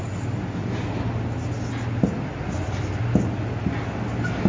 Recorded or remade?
recorded